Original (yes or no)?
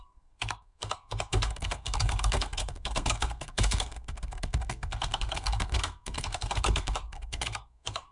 no